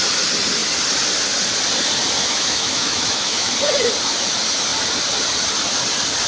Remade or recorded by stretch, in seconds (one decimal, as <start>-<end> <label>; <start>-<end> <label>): 0.0-2.2 recorded; 2.2-3.5 remade; 3.5-6.3 recorded